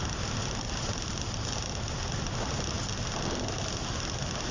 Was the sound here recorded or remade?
recorded